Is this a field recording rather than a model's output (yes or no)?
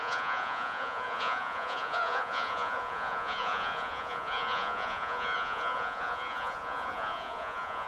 no